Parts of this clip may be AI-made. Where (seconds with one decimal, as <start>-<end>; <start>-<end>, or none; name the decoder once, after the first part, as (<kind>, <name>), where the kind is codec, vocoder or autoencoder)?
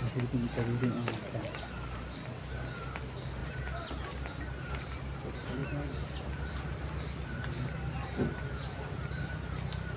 none